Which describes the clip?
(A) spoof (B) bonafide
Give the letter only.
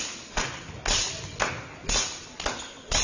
B